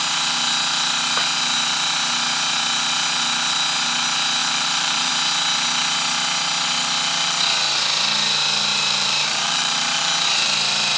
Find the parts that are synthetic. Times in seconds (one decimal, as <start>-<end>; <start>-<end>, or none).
4.4-5.1; 8.7-10.0